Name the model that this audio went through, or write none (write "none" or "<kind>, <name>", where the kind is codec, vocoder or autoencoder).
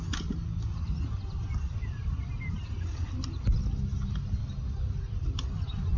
none